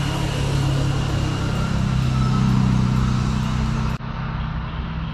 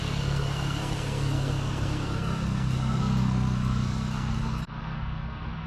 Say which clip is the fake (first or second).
second